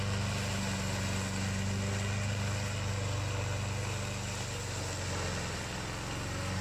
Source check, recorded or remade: recorded